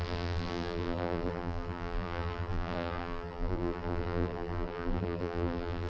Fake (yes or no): yes